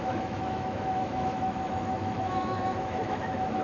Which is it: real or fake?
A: fake